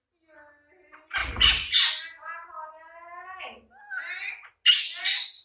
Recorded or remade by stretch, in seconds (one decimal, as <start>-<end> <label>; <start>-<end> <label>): 0.0-5.4 recorded